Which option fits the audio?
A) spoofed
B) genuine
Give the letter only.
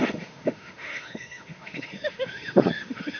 A